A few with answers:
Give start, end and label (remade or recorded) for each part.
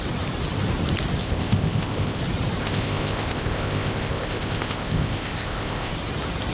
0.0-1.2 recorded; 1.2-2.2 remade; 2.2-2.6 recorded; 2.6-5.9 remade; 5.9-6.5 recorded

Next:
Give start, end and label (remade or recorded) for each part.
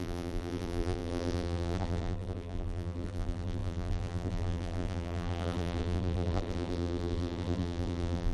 0.0-8.3 remade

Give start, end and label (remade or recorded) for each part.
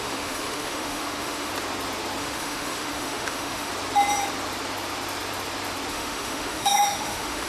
0.0-1.5 remade; 1.5-2.2 recorded; 2.2-3.7 remade; 3.7-5.9 recorded; 5.9-7.5 remade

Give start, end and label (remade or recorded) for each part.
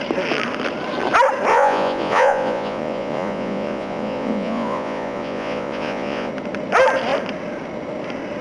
0.0-1.5 recorded; 1.5-6.3 remade; 6.3-8.4 recorded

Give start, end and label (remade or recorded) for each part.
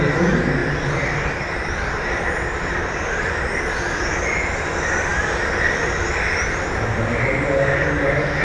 0.0-0.6 recorded; 0.6-2.2 remade; 2.2-8.4 recorded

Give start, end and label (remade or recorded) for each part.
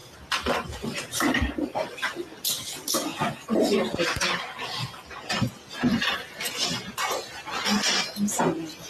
0.0-2.5 remade; 2.5-8.9 recorded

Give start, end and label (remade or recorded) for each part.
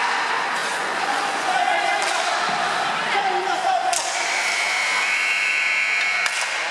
0.0-0.6 recorded; 0.6-1.8 remade; 1.8-6.7 recorded